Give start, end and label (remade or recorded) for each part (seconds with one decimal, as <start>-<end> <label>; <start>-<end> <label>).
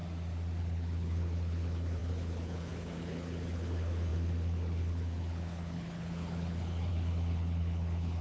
0.0-0.6 recorded; 0.6-8.2 remade